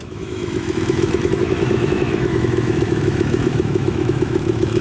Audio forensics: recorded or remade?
remade